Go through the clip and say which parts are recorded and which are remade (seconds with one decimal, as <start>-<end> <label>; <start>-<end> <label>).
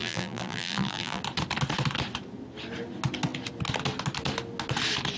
0.0-1.2 remade; 1.2-5.2 recorded